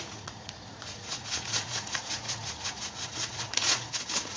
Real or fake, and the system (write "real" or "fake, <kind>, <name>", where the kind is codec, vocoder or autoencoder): fake, vocoder, Vocos